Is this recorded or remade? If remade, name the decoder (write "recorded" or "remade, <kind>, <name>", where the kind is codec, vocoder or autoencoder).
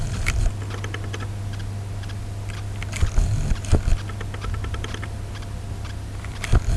recorded